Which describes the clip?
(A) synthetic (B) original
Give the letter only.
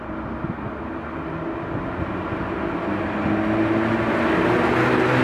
B